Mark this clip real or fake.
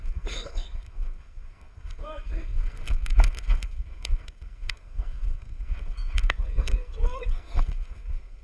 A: fake